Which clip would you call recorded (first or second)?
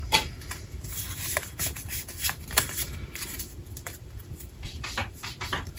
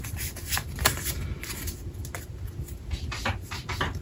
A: second